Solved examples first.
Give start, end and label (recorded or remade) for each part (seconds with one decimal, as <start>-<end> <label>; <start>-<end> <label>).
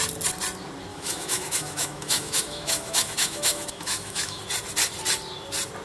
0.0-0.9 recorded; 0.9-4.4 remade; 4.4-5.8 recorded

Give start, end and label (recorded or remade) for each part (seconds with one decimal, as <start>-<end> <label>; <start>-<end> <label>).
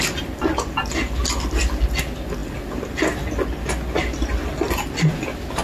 0.0-5.6 recorded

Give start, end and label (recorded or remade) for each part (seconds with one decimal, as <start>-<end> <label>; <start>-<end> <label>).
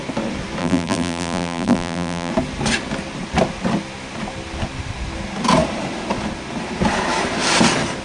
0.0-0.6 recorded; 0.6-2.3 remade; 2.3-8.0 recorded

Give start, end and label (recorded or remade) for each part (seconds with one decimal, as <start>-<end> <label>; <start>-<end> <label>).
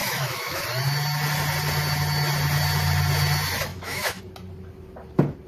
0.0-0.6 remade; 0.6-3.7 recorded; 3.7-4.2 remade; 4.2-5.5 recorded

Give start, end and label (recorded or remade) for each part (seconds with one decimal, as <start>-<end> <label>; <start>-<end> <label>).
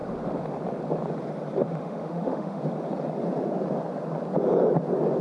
0.0-1.6 recorded; 1.6-2.6 remade; 2.6-5.2 recorded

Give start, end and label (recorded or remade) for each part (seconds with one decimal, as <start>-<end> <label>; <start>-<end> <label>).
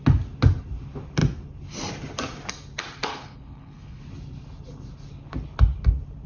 0.0-3.1 recorded; 3.1-4.0 remade; 4.0-6.3 recorded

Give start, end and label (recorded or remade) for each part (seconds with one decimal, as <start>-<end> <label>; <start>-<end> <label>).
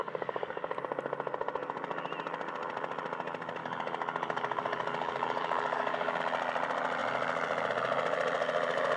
0.0-0.8 remade; 0.8-3.6 recorded; 3.6-6.2 remade; 6.2-9.0 recorded